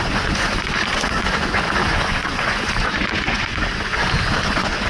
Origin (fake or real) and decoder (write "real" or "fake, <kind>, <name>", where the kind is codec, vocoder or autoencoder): fake, vocoder, Vocos